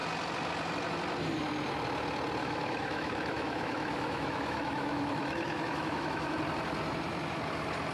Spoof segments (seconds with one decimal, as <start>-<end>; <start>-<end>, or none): 2.4-6.4